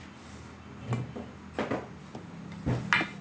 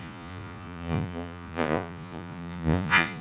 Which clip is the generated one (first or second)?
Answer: second